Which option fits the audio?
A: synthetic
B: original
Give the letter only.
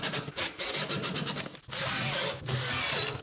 B